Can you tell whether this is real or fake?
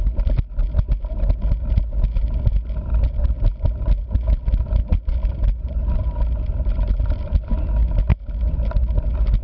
real